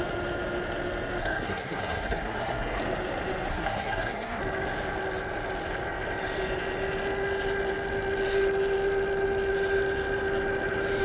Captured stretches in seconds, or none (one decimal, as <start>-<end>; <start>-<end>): 0.0-1.2; 2.8-3.5; 4.4-11.0